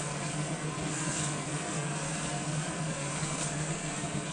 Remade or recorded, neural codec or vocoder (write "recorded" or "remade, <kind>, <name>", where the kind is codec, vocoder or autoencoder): remade, codec, SNAC